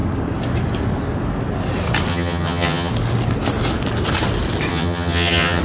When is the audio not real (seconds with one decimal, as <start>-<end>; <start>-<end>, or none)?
2.1-2.9; 4.7-5.6